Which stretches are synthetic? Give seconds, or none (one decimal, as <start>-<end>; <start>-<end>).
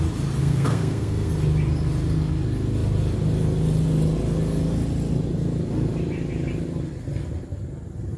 0.4-1.3